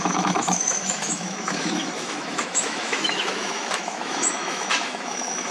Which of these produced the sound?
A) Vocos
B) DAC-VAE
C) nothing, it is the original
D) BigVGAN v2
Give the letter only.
B